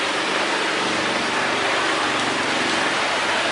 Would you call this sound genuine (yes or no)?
yes